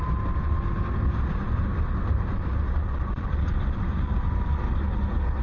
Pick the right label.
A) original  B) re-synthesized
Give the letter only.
A